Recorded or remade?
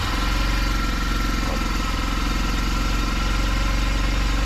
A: recorded